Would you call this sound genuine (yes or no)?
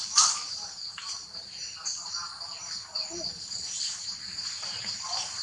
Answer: no